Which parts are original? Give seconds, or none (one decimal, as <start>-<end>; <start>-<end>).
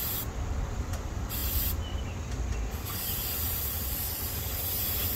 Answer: 0.0-0.7; 1.4-3.0